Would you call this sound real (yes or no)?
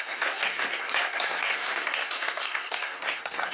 no